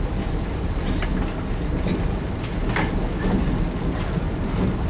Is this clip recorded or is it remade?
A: recorded